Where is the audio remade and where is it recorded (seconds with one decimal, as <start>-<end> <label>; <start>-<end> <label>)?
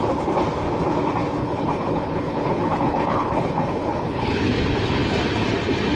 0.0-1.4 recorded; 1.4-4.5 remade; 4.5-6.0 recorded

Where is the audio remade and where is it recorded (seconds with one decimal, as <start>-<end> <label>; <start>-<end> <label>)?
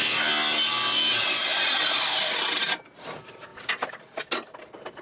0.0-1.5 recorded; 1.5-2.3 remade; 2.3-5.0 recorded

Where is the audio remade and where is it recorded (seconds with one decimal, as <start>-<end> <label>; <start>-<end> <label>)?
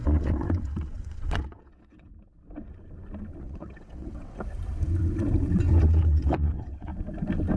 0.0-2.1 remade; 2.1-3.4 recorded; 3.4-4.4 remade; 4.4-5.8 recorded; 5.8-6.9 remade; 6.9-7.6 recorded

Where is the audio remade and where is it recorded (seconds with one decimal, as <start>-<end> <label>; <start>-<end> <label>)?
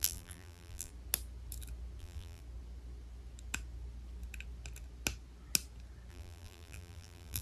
0.0-0.9 remade; 0.9-2.0 recorded; 2.0-2.4 remade; 2.4-6.1 recorded; 6.1-7.4 remade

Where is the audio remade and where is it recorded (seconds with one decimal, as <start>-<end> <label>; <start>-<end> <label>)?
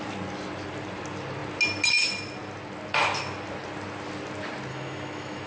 0.0-4.7 recorded; 4.7-5.5 remade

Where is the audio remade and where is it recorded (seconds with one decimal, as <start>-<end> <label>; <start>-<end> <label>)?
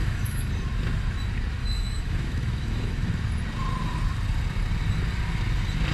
0.0-0.5 remade; 0.5-1.6 recorded; 1.6-3.1 remade; 3.1-5.9 recorded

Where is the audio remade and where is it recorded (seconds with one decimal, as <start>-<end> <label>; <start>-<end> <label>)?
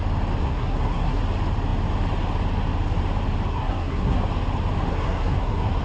0.0-0.4 recorded; 0.4-1.2 remade; 1.2-3.5 recorded; 3.5-4.2 remade; 4.2-4.9 recorded; 4.9-5.8 remade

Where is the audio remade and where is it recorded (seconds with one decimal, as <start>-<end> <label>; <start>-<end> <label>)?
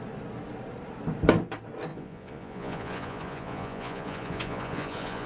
0.0-1.9 recorded; 1.9-5.3 remade